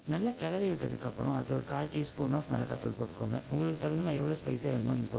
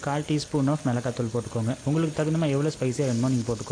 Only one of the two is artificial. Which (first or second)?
first